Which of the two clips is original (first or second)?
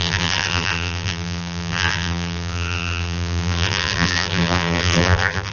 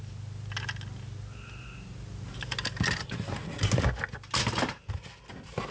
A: second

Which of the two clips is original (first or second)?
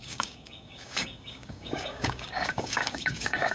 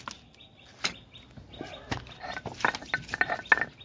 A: second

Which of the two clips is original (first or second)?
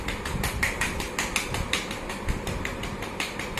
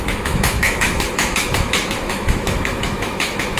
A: first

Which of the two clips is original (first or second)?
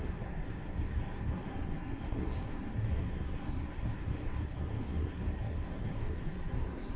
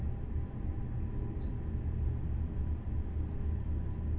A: second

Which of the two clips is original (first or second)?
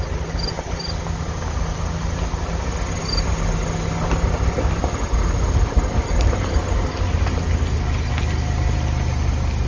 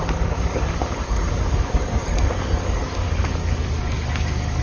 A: first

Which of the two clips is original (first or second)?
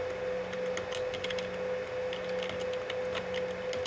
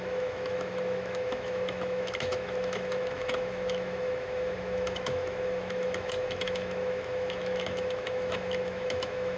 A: first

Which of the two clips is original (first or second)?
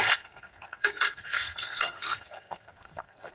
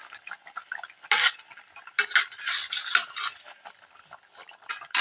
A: second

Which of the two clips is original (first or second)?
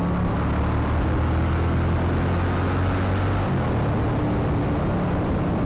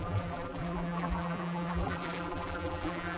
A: first